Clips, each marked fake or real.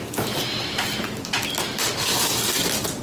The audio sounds real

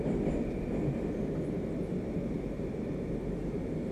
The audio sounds real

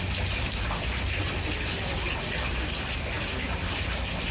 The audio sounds real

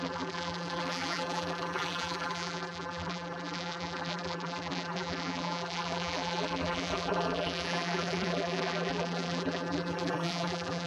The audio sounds fake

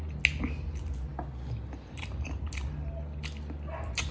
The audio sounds real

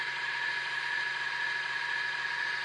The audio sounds real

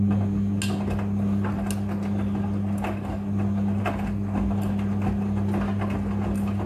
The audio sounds real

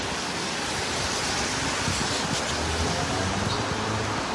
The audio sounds real